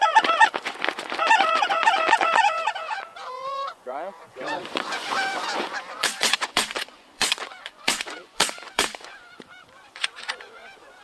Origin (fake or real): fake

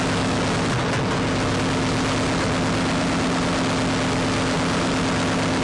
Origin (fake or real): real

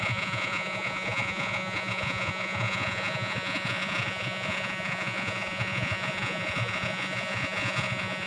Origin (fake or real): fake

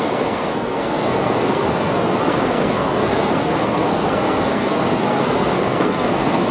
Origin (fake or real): fake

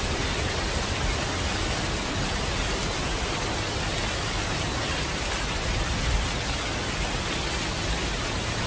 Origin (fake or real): real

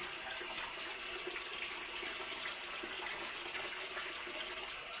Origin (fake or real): real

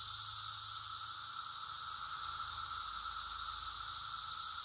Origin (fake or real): real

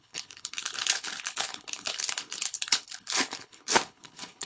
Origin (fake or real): fake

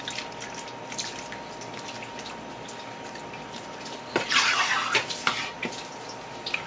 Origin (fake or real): real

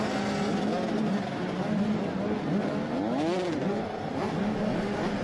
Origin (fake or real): real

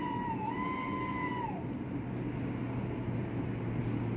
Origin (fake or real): real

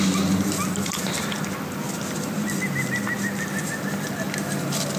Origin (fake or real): real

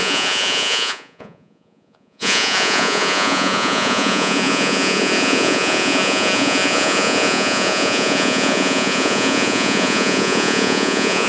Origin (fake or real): fake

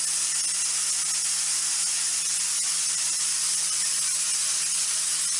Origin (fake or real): real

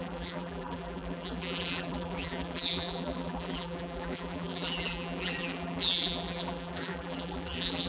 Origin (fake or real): fake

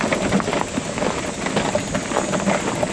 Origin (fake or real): real